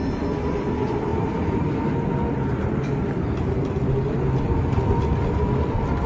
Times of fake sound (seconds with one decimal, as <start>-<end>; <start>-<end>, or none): 1.1-1.7